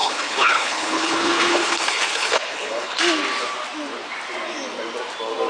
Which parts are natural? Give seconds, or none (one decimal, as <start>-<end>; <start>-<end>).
3.0-5.5

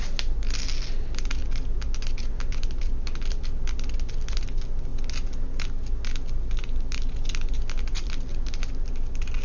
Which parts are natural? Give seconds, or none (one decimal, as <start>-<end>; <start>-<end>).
0.0-9.4